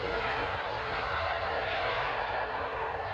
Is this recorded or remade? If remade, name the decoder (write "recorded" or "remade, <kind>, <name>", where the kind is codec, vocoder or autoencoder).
remade, codec, SNAC